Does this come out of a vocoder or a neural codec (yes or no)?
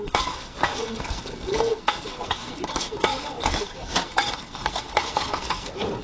yes